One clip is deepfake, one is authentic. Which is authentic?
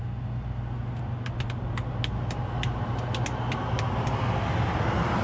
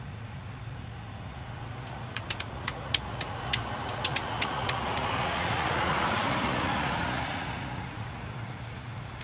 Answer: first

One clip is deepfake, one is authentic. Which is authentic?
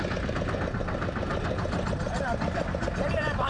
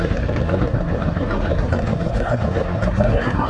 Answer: first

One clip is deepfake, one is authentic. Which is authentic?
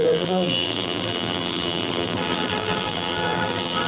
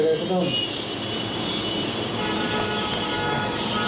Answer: second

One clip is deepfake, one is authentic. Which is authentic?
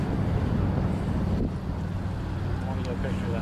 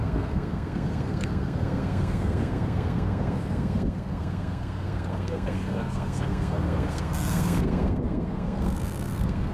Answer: first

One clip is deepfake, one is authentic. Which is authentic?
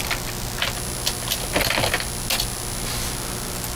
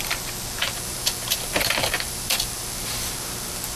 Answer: first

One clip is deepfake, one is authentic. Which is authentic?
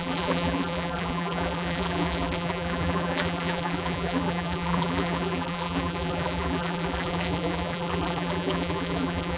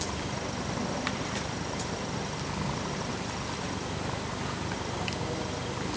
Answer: second